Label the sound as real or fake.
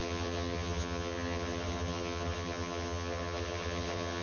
fake